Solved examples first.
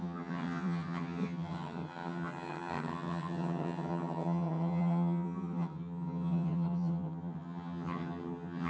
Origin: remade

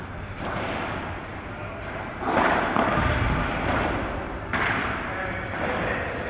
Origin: recorded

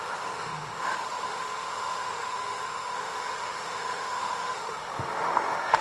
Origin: remade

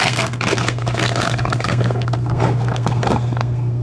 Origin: remade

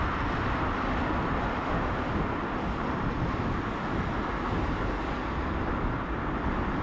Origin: recorded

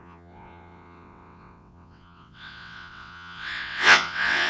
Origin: remade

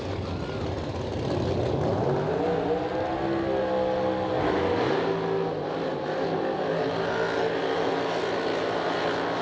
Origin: recorded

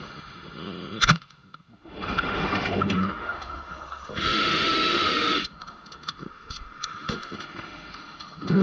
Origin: remade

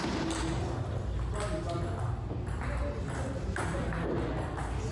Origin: recorded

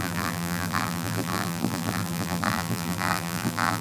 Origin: remade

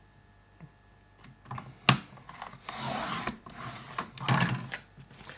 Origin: recorded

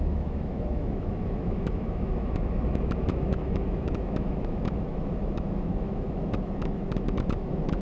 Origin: remade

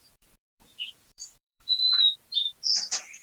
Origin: remade